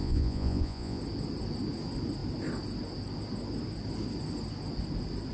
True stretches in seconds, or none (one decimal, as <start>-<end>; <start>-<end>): 1.0-5.3